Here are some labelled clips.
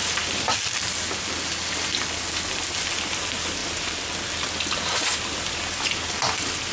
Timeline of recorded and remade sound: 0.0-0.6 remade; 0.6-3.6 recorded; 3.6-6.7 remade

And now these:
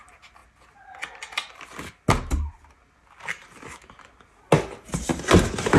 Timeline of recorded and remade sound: 0.0-5.8 recorded

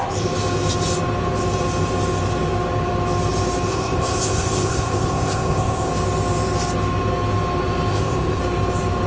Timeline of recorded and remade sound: 0.0-3.7 recorded; 3.7-5.9 remade; 5.9-7.9 recorded; 7.9-8.4 remade; 8.4-9.1 recorded